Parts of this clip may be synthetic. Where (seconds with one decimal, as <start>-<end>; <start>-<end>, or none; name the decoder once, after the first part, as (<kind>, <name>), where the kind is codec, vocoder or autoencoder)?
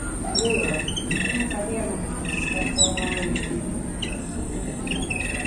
4.2-4.8 (codec, SNAC)